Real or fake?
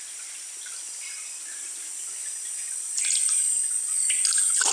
real